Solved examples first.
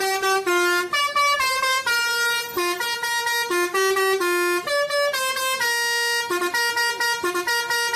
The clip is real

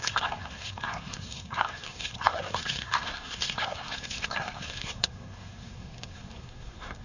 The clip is fake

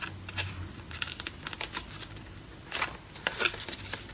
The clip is real